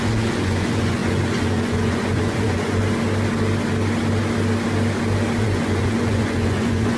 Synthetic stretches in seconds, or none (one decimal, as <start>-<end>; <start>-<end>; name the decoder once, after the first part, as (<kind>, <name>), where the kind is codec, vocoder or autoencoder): 0.0-2.8 (vocoder, Vocos); 5.4-7.0